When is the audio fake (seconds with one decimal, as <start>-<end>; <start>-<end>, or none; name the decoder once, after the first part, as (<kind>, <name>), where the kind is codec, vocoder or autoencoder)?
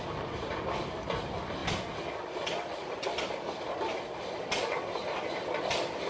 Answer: none